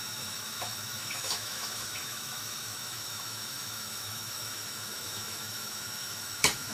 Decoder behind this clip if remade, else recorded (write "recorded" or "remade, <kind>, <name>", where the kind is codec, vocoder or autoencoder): remade, autoencoder, DAC-VAE